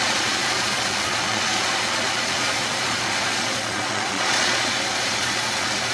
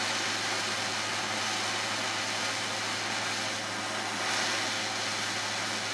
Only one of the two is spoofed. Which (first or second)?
first